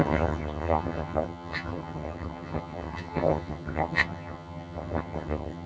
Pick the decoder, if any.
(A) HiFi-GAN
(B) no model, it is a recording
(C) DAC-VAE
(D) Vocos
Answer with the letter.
A